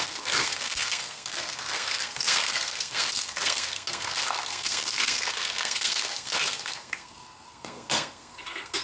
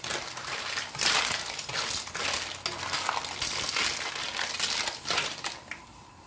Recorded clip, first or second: second